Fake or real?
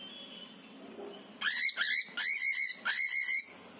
real